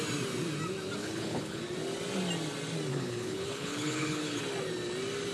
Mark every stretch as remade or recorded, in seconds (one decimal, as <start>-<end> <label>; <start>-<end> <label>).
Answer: 0.0-1.0 recorded; 1.0-1.6 remade; 1.6-2.9 recorded; 2.9-4.4 remade; 4.4-5.3 recorded